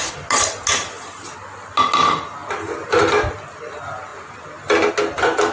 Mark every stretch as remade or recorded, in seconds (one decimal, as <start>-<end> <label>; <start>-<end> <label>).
0.0-2.4 recorded; 2.4-3.0 remade; 3.0-5.5 recorded